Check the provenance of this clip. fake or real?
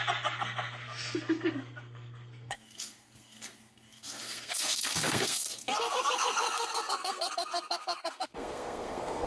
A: fake